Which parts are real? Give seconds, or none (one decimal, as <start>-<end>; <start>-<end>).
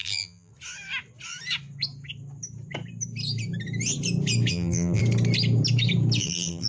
0.5-4.5; 5.0-6.2